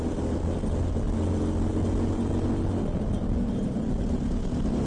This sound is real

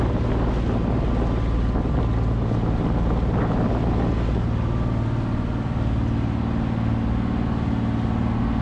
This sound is real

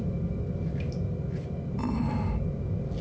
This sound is real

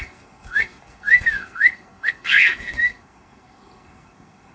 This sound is fake